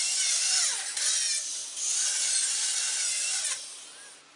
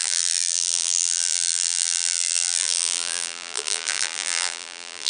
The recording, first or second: first